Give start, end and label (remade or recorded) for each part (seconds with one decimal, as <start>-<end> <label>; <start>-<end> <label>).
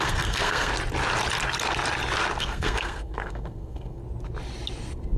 0.0-0.7 remade; 0.7-2.4 recorded; 2.4-4.0 remade; 4.0-5.2 recorded